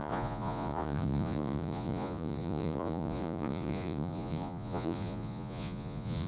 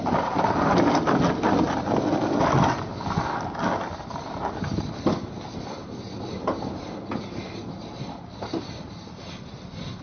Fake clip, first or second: first